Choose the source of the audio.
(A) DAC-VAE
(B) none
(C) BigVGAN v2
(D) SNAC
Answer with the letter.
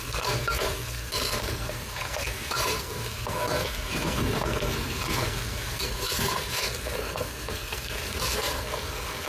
D